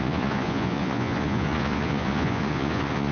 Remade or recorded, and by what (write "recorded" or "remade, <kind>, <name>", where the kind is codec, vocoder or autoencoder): remade, vocoder, Vocos